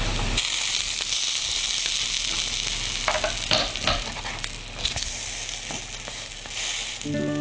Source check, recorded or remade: recorded